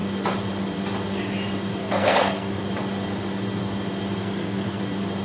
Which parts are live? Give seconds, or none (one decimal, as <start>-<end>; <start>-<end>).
0.0-1.8; 2.6-4.2; 4.8-5.2